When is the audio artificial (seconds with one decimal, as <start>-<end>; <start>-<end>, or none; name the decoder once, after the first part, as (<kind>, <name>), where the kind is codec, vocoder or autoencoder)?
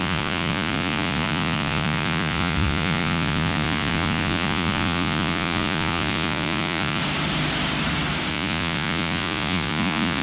0.0-7.0 (vocoder, Vocos); 8.3-10.2